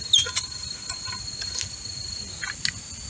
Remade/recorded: recorded